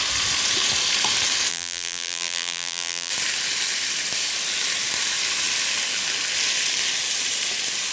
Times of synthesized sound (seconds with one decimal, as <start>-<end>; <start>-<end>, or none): 1.5-3.1

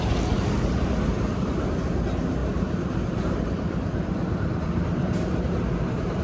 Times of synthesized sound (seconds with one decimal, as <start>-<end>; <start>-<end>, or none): 2.4-6.2

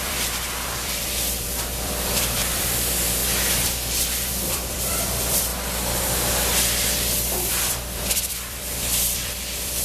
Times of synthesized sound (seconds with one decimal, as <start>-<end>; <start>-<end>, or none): 0.0-3.2; 4.3-5.5; 7.5-9.8

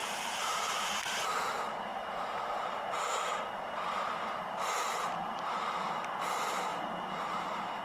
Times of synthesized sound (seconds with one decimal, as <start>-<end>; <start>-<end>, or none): 0.0-1.3; 1.9-2.8; 4.8-5.7

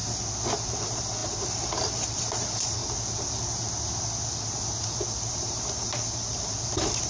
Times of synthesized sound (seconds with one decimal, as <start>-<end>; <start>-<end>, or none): 0.5-2.8; 5.2-7.1

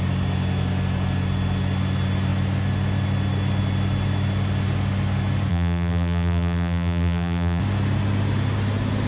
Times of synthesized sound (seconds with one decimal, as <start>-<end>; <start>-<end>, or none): 5.5-7.6

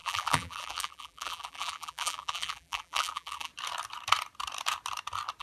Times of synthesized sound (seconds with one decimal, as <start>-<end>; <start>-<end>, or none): 0.0-3.5